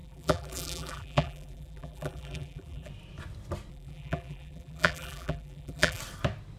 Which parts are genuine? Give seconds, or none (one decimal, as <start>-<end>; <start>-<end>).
2.9-3.7; 6.0-6.6